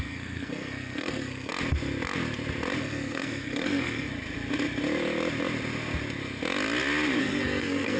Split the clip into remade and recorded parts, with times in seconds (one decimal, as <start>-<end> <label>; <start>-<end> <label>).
0.0-1.5 remade; 1.5-2.8 recorded; 2.8-4.1 remade; 4.1-7.2 recorded; 7.2-8.0 remade